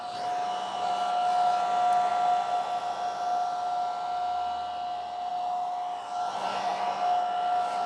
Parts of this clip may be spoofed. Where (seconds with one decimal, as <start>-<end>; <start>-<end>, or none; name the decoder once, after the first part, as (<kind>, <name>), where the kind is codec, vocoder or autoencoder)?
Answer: none